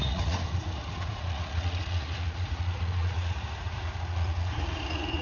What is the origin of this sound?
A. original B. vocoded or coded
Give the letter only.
B